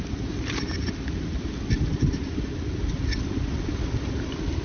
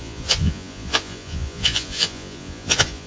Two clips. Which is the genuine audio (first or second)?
first